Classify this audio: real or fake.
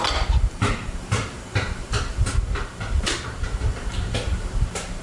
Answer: fake